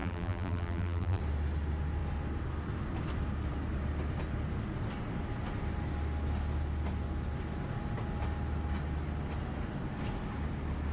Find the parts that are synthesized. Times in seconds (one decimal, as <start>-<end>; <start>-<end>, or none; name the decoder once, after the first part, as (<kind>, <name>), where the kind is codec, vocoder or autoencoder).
0.0-1.2 (vocoder, BigVGAN v2)